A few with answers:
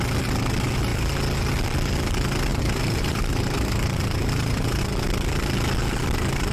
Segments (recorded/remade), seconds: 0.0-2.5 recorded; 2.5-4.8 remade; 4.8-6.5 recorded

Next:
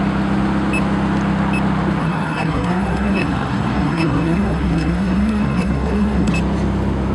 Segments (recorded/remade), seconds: 0.0-2.0 recorded; 2.0-6.3 remade; 6.3-7.1 recorded